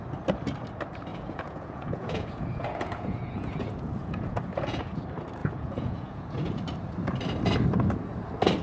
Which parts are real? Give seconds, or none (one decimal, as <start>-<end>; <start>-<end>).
0.0-1.1; 5.0-5.4; 6.6-8.6